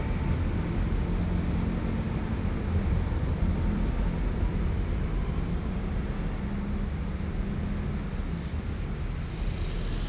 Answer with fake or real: real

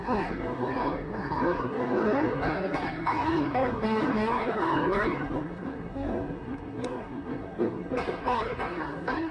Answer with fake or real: fake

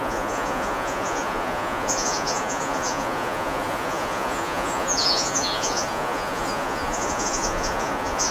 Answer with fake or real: fake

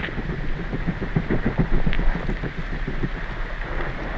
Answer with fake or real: real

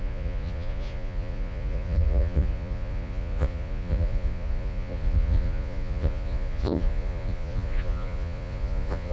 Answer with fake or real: fake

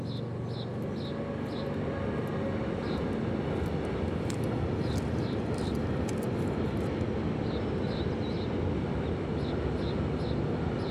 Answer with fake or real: real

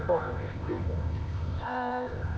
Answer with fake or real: fake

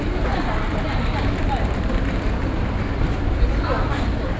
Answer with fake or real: real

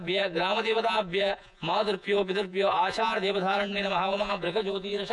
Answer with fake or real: fake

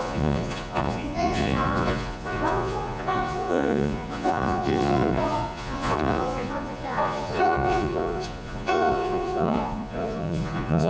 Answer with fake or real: fake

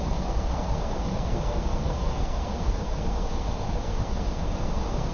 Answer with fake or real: fake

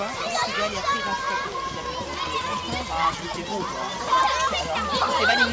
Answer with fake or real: real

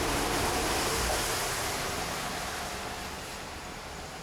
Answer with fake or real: real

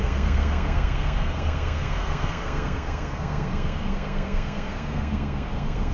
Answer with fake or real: fake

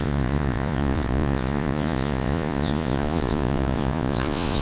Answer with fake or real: fake